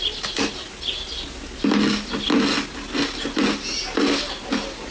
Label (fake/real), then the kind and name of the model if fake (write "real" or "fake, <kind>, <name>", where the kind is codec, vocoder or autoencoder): real